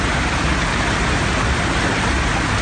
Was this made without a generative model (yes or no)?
yes